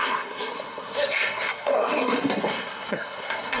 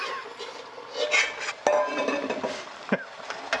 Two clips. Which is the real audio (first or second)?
second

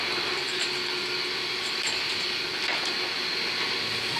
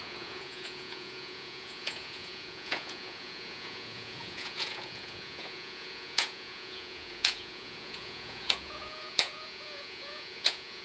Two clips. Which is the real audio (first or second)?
first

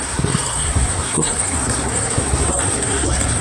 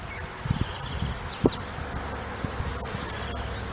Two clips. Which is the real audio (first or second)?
second